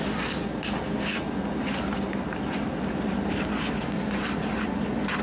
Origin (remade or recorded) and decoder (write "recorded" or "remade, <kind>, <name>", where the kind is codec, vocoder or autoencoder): recorded